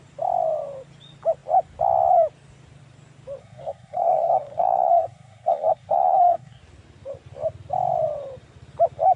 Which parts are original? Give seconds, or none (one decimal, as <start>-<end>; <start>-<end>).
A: 0.0-3.4; 6.6-9.2